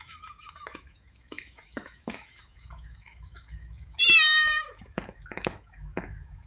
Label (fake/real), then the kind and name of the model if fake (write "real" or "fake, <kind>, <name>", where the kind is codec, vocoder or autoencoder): fake, autoencoder, DAC-VAE